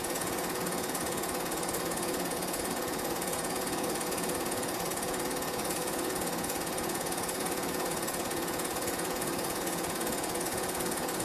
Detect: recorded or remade remade